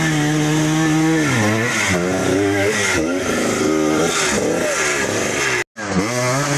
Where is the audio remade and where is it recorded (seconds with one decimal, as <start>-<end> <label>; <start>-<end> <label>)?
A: 0.0-2.2 recorded; 2.2-3.6 remade; 3.6-4.9 recorded; 4.9-5.4 remade; 5.4-6.6 recorded